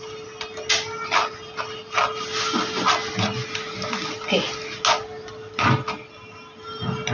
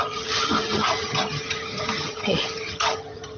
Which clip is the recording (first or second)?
first